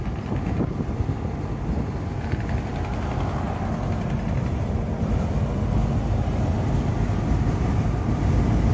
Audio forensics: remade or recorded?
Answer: recorded